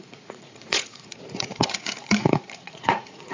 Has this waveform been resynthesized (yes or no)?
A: yes